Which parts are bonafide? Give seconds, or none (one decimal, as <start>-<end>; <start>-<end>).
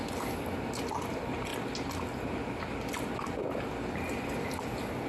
0.0-5.1